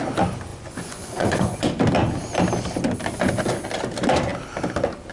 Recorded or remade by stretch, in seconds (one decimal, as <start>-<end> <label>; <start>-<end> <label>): 0.0-0.5 recorded; 0.5-1.8 remade; 1.8-5.1 recorded